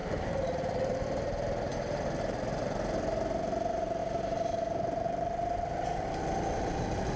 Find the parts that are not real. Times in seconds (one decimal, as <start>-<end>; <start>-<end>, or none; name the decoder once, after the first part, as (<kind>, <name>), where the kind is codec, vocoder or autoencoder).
0.0-1.0 (vocoder, BigVGAN v2); 4.0-6.2